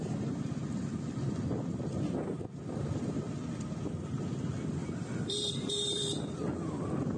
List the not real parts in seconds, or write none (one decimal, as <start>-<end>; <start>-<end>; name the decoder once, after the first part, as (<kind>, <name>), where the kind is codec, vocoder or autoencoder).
4.8-6.0 (vocoder, BigVGAN v2)